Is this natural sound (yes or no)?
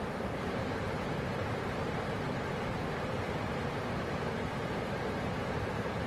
no